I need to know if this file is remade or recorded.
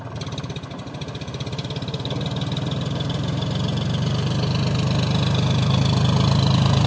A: recorded